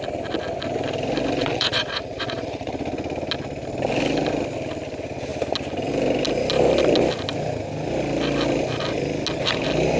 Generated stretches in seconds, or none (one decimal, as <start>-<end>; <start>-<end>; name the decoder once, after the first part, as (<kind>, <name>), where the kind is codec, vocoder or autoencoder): 1.4-2.7 (vocoder, Vocos)